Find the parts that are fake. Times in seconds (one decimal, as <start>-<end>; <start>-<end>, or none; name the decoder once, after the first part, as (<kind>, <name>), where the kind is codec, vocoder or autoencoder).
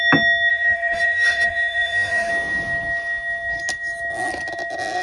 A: 0.5-2.3 (autoencoder, DAC-VAE)